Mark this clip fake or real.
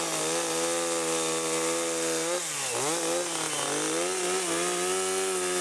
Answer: real